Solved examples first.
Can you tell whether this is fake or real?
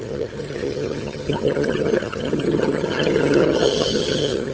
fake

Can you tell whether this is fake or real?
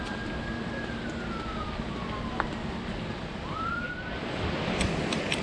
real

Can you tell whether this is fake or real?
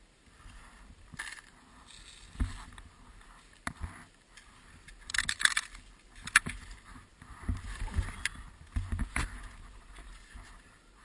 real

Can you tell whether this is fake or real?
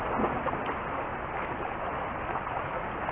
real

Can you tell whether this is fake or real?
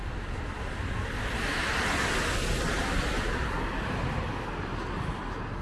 real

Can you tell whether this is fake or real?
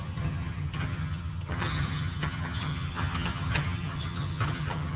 fake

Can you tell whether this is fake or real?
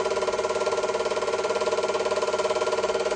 fake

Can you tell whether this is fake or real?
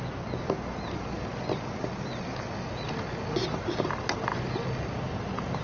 real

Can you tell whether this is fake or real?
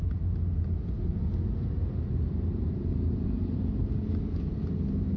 real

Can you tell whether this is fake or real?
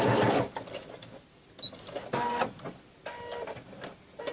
real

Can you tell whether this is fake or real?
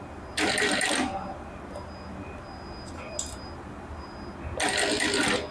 real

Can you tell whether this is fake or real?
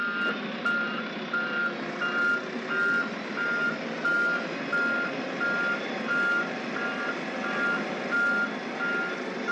real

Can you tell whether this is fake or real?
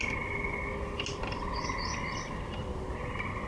real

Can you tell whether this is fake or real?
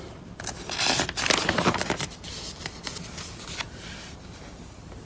real